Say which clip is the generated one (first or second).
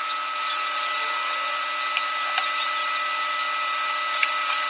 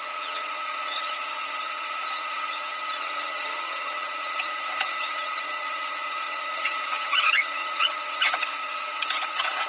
second